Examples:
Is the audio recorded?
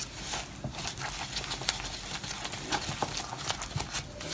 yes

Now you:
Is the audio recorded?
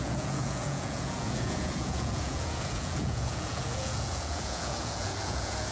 no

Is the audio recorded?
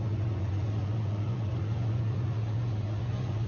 no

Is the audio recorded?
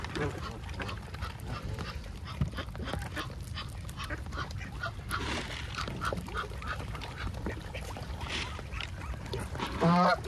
no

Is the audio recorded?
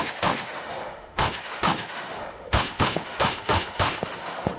no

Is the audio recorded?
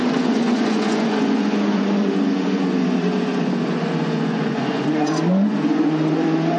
no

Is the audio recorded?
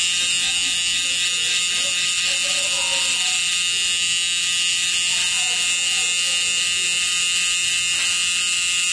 yes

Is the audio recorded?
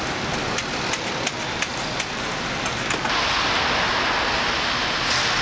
yes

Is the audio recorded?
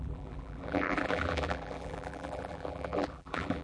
no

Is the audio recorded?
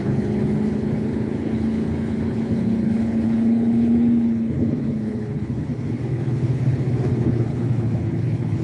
no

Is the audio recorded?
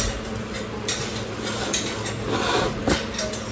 yes